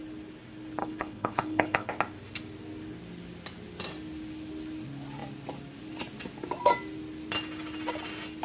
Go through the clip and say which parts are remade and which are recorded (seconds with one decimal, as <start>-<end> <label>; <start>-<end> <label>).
0.0-0.8 recorded; 0.8-1.9 remade; 1.9-8.4 recorded